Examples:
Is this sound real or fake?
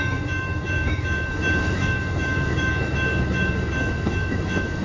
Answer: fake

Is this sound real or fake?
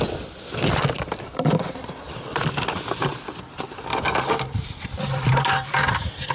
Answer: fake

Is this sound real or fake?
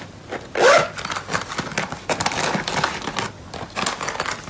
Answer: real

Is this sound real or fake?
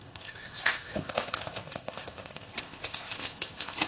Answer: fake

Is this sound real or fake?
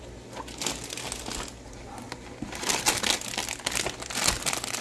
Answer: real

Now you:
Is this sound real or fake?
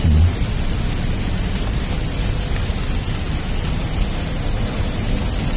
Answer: real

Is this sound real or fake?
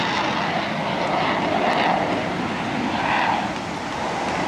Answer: real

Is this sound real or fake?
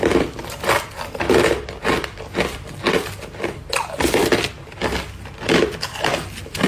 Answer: real